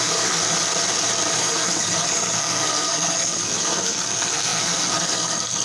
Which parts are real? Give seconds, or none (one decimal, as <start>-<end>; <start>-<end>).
0.4-1.4